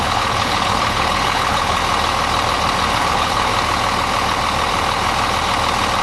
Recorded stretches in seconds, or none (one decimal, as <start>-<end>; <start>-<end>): 1.8-2.9; 3.5-6.0